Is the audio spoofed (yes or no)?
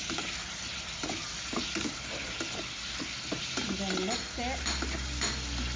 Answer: no